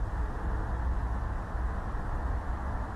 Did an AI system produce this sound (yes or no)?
yes